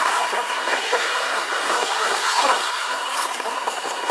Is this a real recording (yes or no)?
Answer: no